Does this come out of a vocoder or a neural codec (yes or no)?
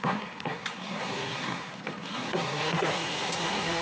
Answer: yes